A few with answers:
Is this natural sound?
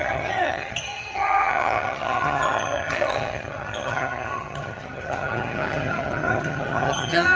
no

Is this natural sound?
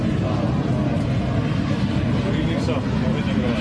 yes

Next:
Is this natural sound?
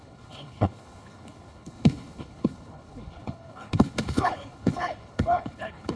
no